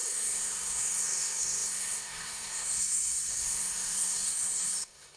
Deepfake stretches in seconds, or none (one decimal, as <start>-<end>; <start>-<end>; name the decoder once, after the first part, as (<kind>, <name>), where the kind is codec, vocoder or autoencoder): 0.0-5.2 (codec, SNAC)